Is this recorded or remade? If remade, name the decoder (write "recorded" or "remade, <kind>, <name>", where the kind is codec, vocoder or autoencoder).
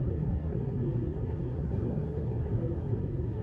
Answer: remade, codec, SNAC